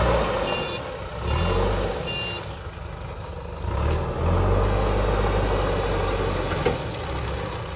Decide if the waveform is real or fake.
real